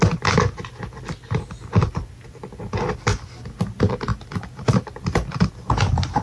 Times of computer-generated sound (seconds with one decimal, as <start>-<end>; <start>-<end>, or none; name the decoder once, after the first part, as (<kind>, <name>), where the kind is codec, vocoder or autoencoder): none